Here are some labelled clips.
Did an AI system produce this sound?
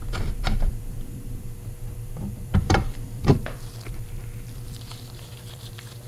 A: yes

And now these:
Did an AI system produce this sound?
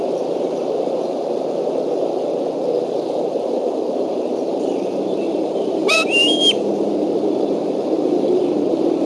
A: yes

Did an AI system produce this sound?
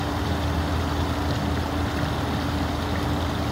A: no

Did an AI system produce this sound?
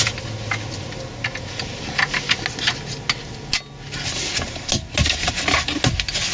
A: no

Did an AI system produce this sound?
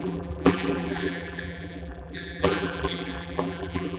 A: yes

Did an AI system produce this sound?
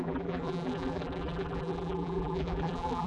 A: yes